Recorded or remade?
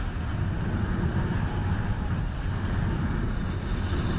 recorded